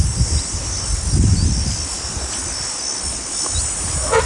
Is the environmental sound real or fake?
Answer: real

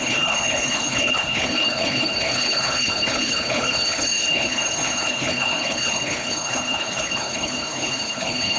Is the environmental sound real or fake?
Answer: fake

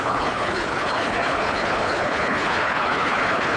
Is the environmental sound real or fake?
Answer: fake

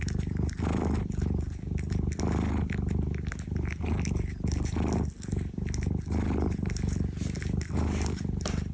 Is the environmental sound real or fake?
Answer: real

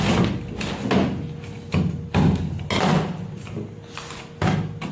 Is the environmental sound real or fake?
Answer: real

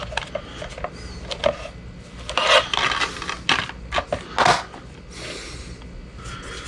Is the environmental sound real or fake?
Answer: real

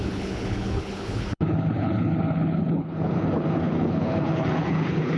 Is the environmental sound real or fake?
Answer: fake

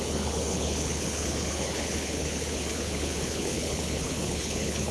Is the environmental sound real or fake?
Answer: fake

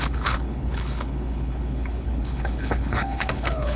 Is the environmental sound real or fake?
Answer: fake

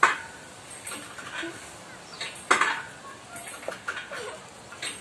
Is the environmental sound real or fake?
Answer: real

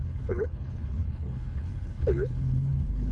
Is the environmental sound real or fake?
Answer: fake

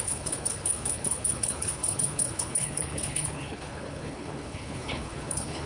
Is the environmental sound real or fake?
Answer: fake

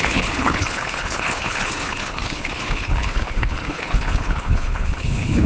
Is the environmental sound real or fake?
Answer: fake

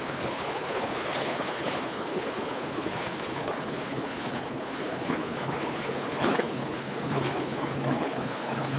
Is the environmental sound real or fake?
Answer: fake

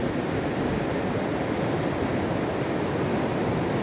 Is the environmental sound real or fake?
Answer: real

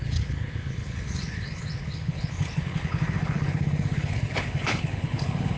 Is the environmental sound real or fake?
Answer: fake